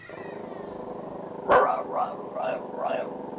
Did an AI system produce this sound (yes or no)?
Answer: no